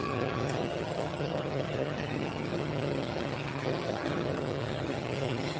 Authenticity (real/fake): fake